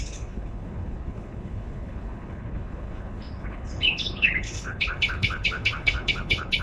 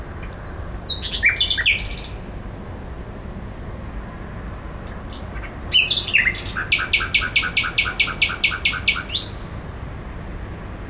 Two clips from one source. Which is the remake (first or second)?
first